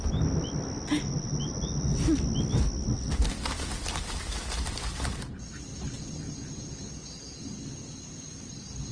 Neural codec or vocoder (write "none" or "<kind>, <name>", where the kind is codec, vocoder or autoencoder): none